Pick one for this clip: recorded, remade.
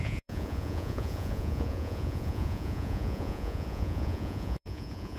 remade